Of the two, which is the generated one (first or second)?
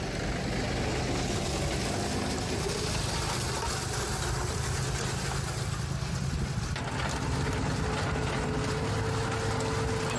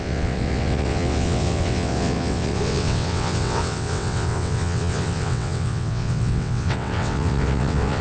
second